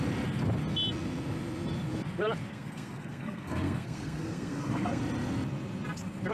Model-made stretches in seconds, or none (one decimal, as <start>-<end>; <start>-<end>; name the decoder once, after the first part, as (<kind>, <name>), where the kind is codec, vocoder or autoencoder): 2.5-5.0 (codec, SNAC)